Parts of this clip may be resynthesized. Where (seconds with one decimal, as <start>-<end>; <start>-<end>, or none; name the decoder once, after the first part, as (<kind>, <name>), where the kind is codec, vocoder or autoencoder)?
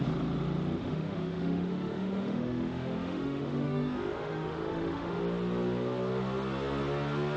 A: 0.8-5.2 (autoencoder, DAC-VAE)